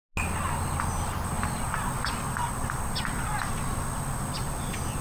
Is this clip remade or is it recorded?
recorded